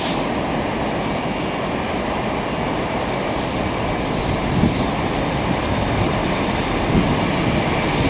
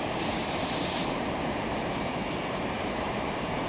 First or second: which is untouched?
first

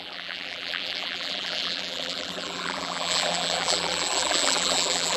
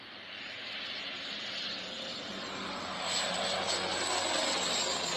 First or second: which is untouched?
second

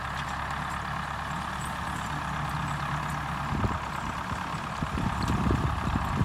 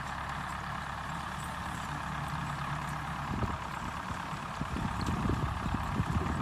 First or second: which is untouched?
first